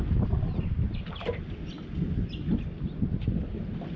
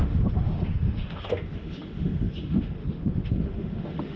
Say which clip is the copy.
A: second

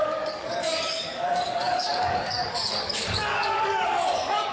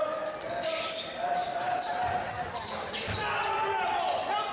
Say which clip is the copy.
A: first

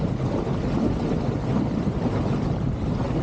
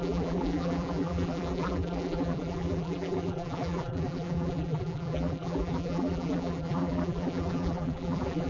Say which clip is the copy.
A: second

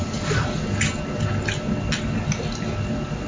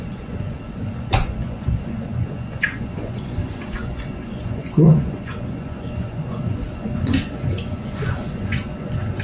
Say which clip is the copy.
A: second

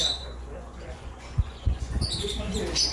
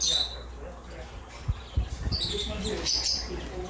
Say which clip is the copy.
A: first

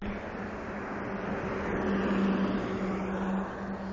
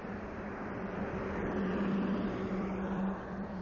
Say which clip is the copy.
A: second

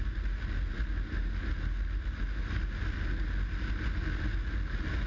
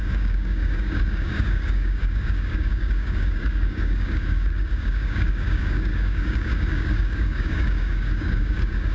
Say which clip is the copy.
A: second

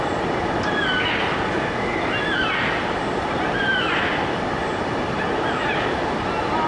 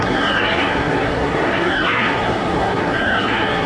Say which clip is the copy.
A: second